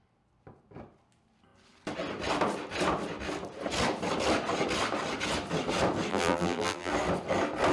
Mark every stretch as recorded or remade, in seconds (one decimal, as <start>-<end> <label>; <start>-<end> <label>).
0.0-6.1 recorded; 6.1-6.9 remade; 6.9-7.7 recorded